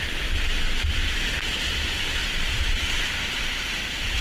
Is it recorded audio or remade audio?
recorded